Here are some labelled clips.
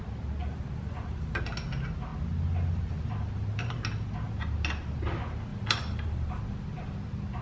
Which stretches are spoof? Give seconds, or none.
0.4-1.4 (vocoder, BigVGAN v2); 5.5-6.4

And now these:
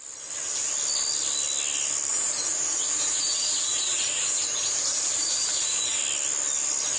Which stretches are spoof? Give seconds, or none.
2.1-6.0 (vocoder, BigVGAN v2)

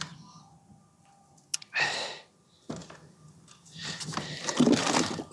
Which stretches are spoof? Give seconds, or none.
none

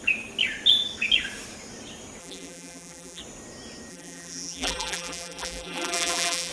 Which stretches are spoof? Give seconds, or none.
2.2-3.2 (vocoder, BigVGAN v2); 3.9-6.5

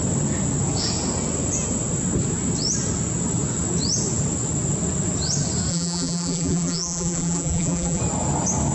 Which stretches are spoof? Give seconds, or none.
5.7-8.0 (vocoder, BigVGAN v2)